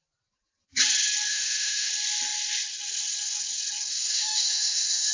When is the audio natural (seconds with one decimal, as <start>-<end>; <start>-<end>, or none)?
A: 0.0-1.3; 1.9-3.9